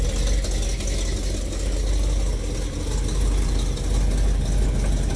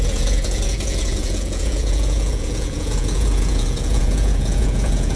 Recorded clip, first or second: first